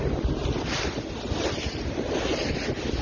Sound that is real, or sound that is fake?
real